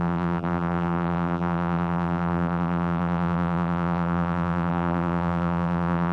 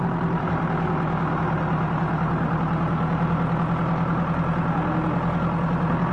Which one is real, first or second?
second